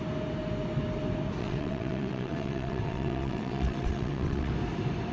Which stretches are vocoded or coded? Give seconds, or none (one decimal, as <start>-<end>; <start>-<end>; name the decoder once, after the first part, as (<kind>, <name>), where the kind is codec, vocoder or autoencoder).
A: 1.4-4.5 (vocoder, WaveNeXt)